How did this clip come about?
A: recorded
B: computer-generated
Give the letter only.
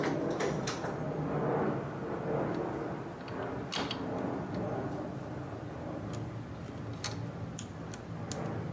A